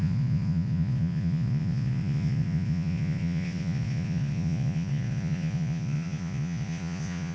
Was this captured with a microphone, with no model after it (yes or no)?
no